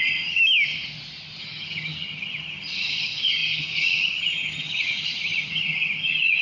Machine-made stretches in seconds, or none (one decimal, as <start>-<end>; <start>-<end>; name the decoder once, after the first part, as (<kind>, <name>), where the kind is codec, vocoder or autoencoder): 0.0-0.4 (vocoder, HiFi-GAN); 1.4-6.4